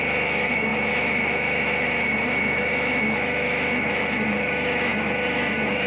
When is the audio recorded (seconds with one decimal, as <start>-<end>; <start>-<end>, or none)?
none